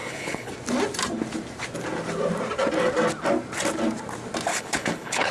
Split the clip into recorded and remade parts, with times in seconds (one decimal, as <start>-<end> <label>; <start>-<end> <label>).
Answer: 0.0-0.5 remade; 0.5-4.5 recorded; 4.5-5.3 remade